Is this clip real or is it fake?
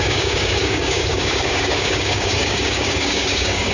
fake